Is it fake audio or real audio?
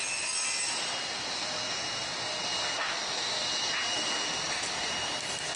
real